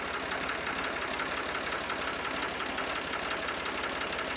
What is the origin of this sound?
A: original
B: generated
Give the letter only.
A